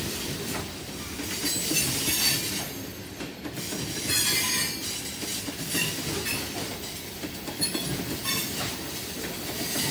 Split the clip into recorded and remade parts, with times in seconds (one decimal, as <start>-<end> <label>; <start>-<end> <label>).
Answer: 0.0-9.9 recorded